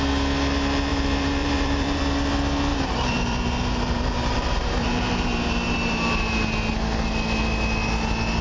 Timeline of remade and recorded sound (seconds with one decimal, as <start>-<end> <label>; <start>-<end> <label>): 0.0-0.9 recorded; 0.9-2.0 remade; 2.0-2.7 recorded; 2.7-6.2 remade; 6.2-8.4 recorded